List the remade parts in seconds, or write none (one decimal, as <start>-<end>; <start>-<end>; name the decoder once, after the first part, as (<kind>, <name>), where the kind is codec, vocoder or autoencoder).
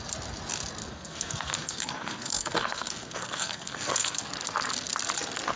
0.8-4.2 (codec, SNAC)